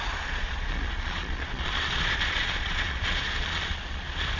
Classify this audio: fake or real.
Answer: fake